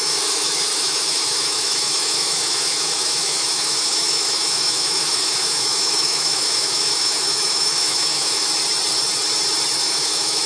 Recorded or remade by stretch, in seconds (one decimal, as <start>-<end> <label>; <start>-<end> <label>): 0.0-8.5 remade; 8.5-9.8 recorded; 9.8-10.5 remade